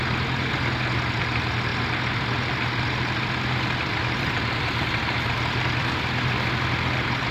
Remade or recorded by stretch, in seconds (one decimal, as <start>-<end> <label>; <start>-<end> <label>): 0.0-7.3 remade